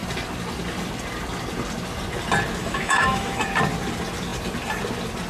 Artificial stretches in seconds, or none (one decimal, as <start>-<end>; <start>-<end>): 2.6-3.4